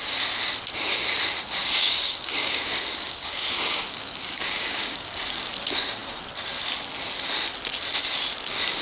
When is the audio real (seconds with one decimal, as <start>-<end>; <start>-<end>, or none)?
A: 0.0-1.6; 5.5-8.8

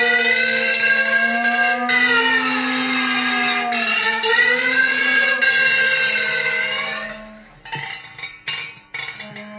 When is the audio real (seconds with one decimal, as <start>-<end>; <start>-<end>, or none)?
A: 0.0-3.9; 5.4-9.6

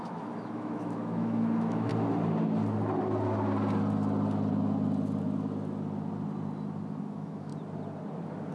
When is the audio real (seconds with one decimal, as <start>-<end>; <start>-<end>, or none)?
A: 1.9-7.0; 7.5-8.5

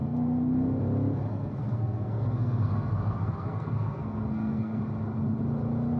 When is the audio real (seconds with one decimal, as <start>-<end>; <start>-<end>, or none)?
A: 0.8-1.3; 4.8-6.0